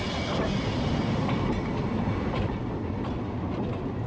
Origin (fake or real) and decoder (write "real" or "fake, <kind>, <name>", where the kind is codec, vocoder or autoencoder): real